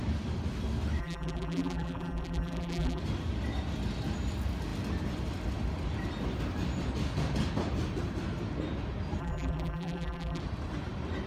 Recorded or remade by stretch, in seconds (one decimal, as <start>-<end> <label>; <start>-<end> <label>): 0.0-1.0 recorded; 1.0-3.0 remade; 3.0-9.2 recorded; 9.2-10.4 remade; 10.4-11.3 recorded